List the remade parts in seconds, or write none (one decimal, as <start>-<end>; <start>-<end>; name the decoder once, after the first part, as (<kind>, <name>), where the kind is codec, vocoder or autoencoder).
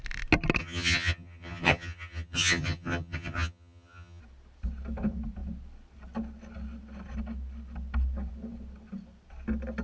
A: 0.6-4.2 (vocoder, HiFi-GAN)